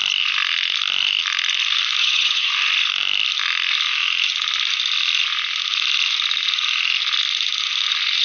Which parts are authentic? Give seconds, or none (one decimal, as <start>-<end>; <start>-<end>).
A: 0.0-2.0; 2.5-8.2